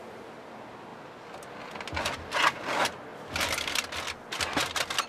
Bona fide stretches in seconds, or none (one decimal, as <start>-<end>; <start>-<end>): 0.0-5.1